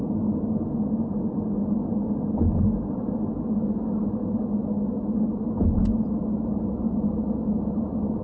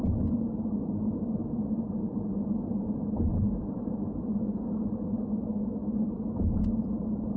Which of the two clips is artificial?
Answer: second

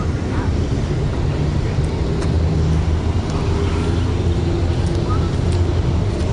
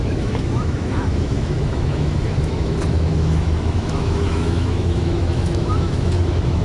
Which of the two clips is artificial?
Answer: second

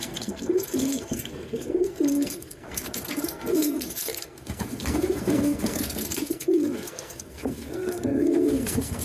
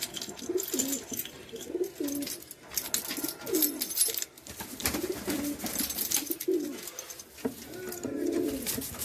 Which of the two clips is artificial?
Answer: first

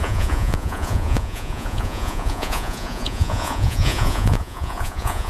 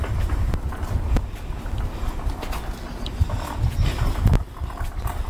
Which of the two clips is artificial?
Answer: first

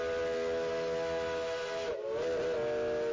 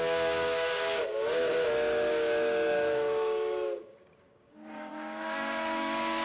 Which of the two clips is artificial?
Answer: second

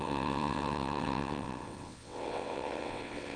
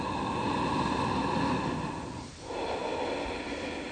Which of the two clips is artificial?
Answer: first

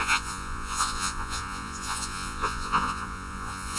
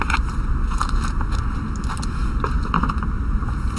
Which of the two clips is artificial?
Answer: first